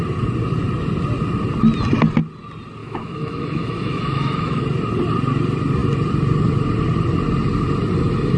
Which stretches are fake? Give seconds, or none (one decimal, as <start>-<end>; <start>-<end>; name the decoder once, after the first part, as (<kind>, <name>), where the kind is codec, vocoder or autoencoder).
2.8-4.6 (autoencoder, DAC-VAE)